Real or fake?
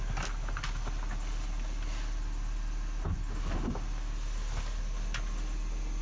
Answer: real